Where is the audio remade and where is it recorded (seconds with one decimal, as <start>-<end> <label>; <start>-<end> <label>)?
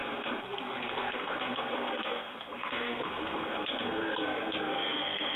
0.0-5.4 remade